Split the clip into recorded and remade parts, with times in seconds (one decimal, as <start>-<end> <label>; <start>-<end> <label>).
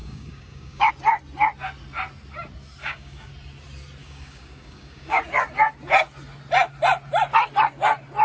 0.0-0.9 remade; 0.9-2.8 recorded; 2.8-3.3 remade; 3.3-4.0 recorded; 4.0-5.2 remade; 5.2-8.2 recorded